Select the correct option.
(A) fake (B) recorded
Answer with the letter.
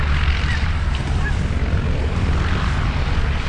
A